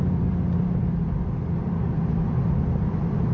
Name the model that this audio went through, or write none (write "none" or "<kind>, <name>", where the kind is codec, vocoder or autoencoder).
vocoder, BigVGAN v2